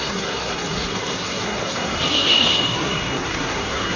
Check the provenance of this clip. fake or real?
fake